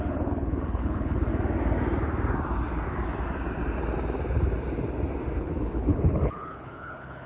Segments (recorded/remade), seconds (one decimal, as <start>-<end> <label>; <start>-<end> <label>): 0.0-1.3 remade; 1.3-5.4 recorded; 5.4-7.3 remade